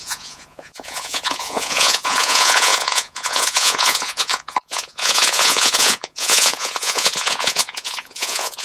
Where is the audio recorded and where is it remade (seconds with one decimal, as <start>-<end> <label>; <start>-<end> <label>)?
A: 0.0-8.6 remade